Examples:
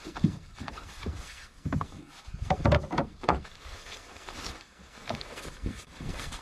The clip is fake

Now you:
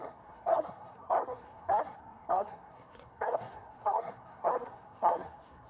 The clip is fake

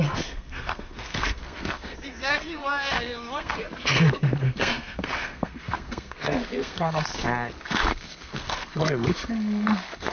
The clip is fake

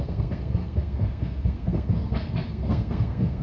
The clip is fake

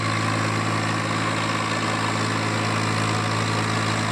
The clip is real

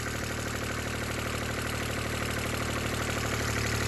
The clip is real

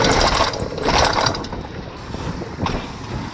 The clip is real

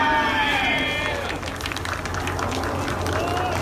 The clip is real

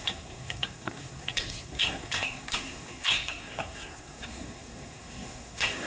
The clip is fake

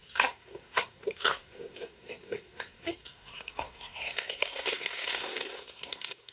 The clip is fake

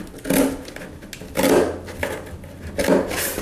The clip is real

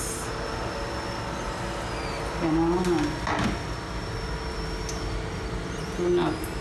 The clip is real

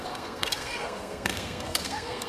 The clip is fake